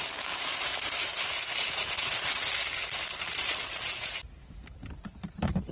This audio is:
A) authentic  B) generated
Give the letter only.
B